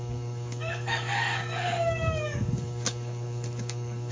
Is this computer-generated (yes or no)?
yes